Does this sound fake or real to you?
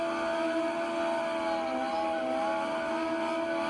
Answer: real